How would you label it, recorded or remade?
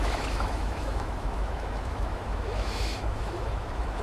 remade